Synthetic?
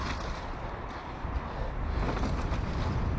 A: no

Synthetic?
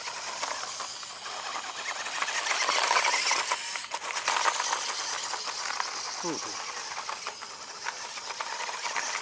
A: no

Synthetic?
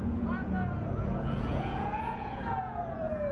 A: yes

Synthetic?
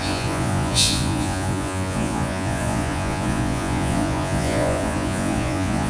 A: yes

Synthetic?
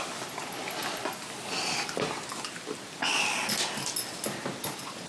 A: no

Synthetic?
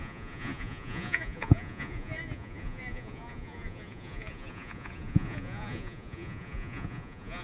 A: yes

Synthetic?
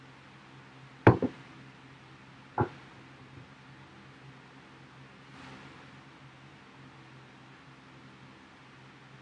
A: no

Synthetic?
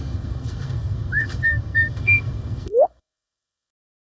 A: yes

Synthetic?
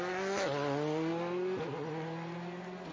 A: no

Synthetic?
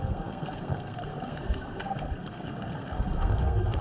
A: yes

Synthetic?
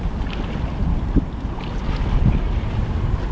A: no